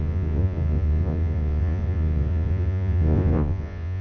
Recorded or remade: remade